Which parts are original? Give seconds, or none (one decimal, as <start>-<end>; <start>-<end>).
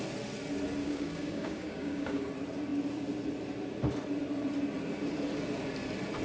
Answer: 0.0-0.8; 2.3-6.2